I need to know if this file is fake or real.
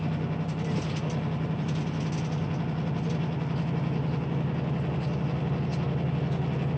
real